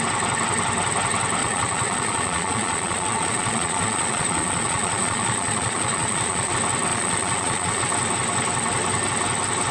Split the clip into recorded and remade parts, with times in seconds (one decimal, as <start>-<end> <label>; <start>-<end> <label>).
0.0-1.4 recorded; 1.4-6.5 remade; 6.5-6.9 recorded; 6.9-7.8 remade; 7.8-9.7 recorded